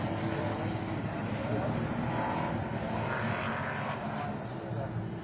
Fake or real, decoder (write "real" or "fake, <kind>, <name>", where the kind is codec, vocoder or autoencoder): real